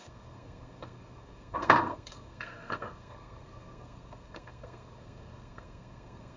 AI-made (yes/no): yes